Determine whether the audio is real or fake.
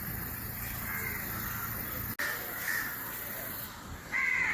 real